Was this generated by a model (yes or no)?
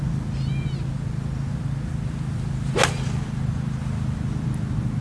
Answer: no